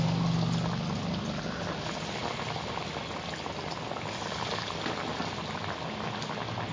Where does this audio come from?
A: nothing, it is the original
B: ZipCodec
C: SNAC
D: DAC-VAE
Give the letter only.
A